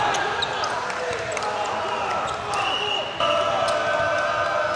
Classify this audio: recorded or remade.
recorded